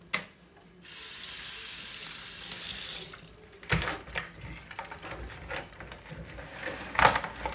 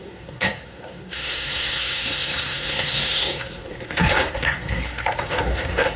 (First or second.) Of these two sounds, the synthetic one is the second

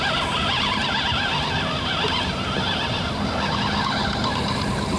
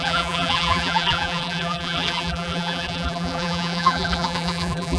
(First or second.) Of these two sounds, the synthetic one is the second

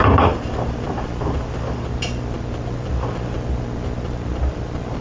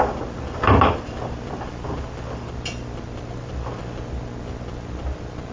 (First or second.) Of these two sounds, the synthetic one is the first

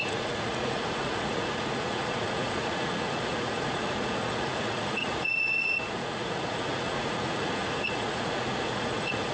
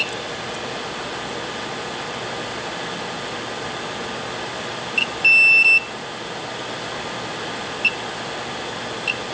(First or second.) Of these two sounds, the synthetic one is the first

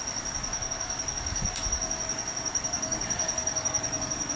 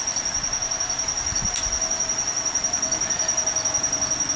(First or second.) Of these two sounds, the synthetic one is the first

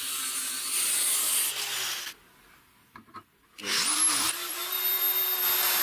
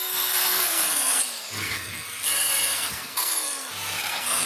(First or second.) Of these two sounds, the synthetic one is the second